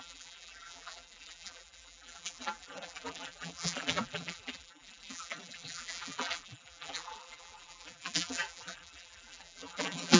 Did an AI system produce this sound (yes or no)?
yes